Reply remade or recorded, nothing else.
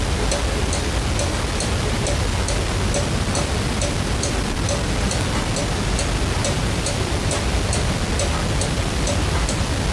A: recorded